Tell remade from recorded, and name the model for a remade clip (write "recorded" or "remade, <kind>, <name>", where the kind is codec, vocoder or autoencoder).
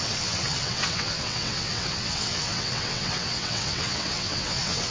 remade, vocoder, WaveNeXt